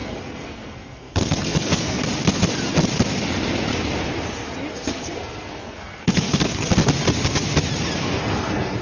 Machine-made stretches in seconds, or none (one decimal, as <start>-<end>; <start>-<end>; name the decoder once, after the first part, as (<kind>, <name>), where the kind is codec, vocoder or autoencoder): 0.0-2.0 (codec, SNAC); 4.7-6.7; 8.2-8.8